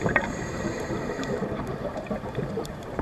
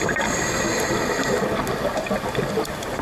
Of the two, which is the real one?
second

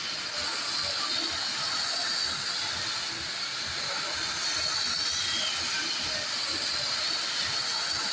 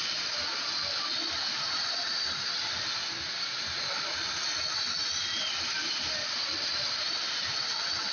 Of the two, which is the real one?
first